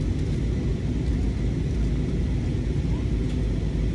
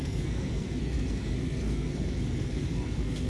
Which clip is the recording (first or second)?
first